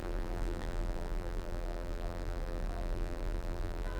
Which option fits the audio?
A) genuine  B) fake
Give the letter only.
B